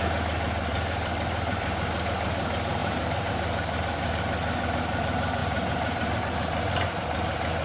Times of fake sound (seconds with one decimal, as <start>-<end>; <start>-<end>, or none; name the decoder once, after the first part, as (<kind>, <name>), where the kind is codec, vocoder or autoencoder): 0.7-1.9 (vocoder, BigVGAN v2); 2.8-3.3; 5.4-6.2